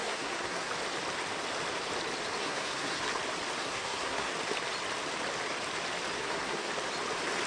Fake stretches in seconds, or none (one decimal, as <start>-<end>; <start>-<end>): 0.0-0.7; 2.4-3.0; 3.6-4.3; 6.2-6.7